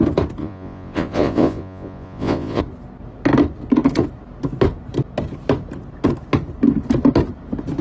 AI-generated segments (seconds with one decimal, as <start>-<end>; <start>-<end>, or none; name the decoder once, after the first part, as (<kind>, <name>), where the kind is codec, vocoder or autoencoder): 0.4-2.6 (vocoder, Vocos)